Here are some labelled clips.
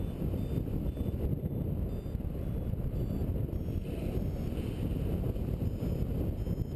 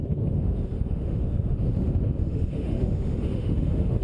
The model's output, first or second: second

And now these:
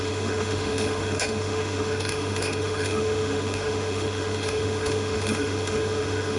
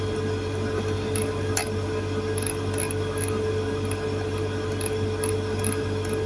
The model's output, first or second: first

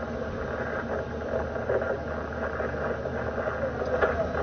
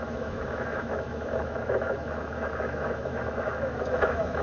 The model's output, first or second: second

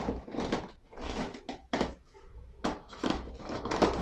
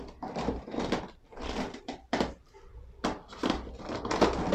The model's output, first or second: first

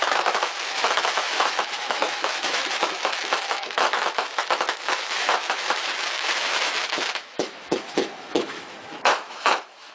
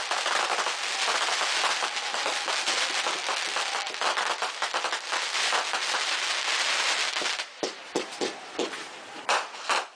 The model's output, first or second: first